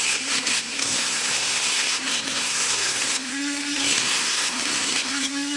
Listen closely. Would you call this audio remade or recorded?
remade